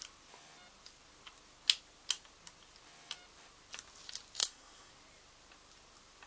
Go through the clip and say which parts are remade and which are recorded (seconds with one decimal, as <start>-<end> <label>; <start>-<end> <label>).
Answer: 0.0-4.4 recorded; 4.4-4.9 remade; 4.9-6.3 recorded